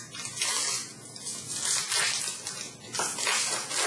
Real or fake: real